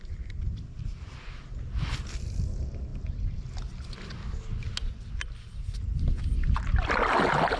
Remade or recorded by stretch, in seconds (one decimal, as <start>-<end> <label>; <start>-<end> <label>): 0.0-7.6 recorded